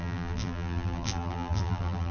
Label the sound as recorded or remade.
remade